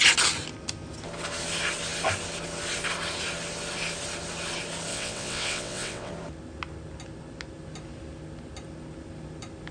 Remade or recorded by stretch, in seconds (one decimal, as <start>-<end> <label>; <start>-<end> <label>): 0.0-4.9 recorded; 4.9-6.1 remade; 6.1-9.7 recorded